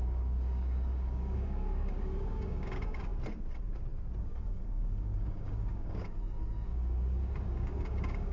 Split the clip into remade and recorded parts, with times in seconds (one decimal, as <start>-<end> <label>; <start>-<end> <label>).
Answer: 0.0-3.1 remade; 3.1-4.2 recorded; 4.2-8.3 remade

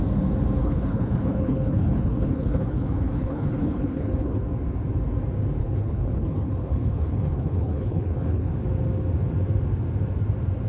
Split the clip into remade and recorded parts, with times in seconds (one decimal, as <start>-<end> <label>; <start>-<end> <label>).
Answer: 0.0-0.6 recorded; 0.6-4.4 remade; 4.4-5.6 recorded; 5.6-8.5 remade; 8.5-10.7 recorded

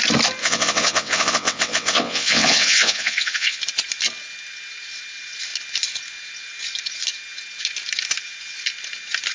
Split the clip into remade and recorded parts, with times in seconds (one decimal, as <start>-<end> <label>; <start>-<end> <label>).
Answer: 0.0-0.4 recorded; 0.4-3.6 remade; 3.6-9.3 recorded

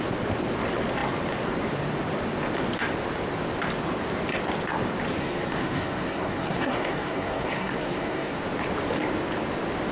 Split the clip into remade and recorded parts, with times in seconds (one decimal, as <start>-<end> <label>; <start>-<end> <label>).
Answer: 0.0-5.2 recorded; 5.2-8.4 remade; 8.4-9.9 recorded